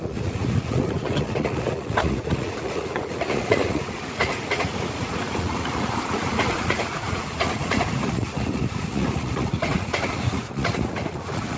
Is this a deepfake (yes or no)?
yes